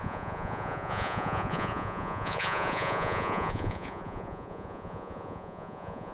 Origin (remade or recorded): remade